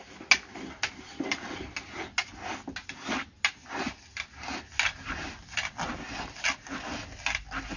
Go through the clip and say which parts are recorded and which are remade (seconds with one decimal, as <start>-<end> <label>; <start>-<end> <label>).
0.0-7.8 recorded